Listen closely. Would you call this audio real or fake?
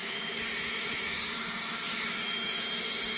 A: fake